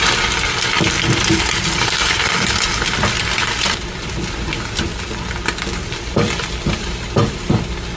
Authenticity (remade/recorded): remade